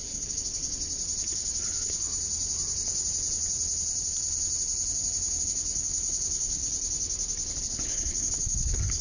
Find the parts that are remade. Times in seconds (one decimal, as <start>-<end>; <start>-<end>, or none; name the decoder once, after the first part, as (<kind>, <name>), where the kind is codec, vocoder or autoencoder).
0.0-0.6 (codec, HILCodec); 1.2-2.1; 5.4-6.6; 7.6-9.0